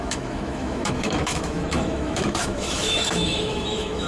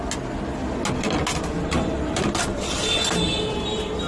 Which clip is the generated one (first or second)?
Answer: first